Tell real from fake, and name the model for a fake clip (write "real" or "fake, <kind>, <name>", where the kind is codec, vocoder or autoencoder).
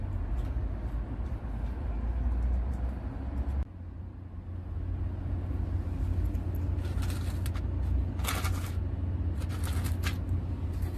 real